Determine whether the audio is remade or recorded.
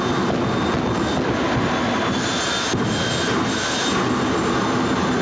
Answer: recorded